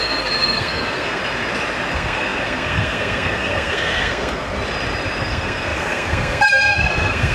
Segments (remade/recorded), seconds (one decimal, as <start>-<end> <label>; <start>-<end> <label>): 0.0-1.2 remade; 1.2-1.9 recorded; 1.9-4.5 remade; 4.5-5.2 recorded; 5.2-7.3 remade